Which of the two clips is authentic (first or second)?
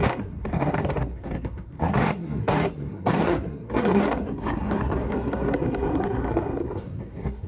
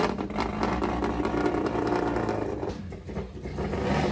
second